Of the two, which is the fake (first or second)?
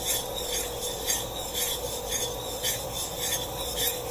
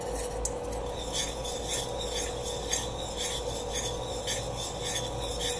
first